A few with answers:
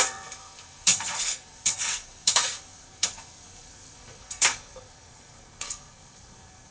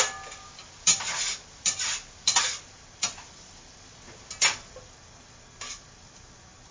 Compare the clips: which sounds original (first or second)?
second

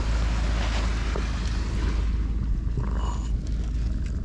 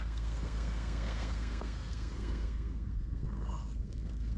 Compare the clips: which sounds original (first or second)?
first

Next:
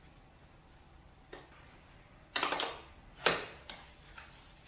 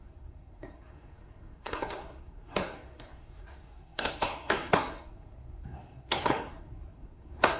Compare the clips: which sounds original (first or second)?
first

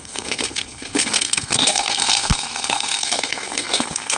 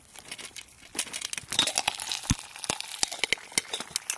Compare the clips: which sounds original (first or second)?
second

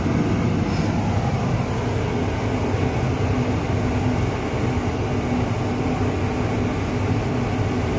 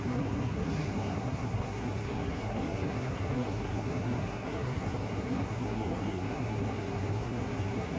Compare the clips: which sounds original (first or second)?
first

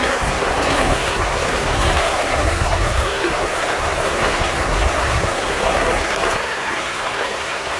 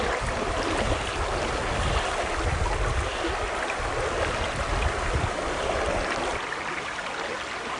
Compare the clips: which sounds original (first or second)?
second